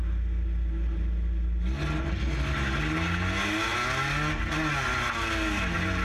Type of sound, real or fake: real